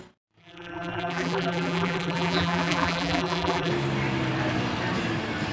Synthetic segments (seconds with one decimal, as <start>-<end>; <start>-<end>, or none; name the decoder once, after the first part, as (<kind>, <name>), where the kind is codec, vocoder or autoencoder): 0.4-3.7 (vocoder, BigVGAN v2)